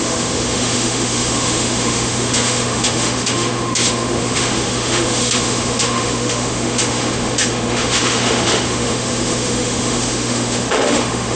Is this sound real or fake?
fake